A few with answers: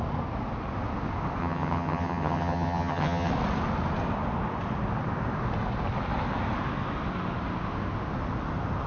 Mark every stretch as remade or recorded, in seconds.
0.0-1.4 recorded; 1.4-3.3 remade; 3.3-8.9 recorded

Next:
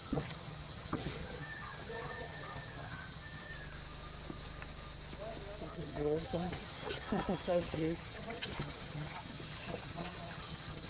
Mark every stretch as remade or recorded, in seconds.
0.0-3.5 remade; 3.5-5.7 recorded; 5.7-10.9 remade